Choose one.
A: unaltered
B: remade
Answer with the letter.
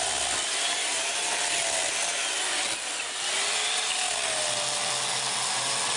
A